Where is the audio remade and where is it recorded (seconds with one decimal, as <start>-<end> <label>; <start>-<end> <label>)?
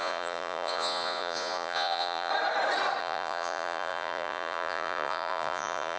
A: 0.0-2.3 remade; 2.3-3.0 recorded; 3.0-6.0 remade